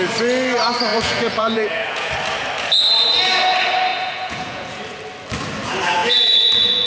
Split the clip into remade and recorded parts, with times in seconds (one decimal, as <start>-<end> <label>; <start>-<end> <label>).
0.0-0.9 recorded; 0.9-2.1 remade; 2.1-3.9 recorded; 3.9-4.8 remade; 4.8-6.0 recorded; 6.0-6.9 remade